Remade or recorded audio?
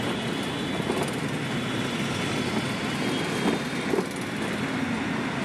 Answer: recorded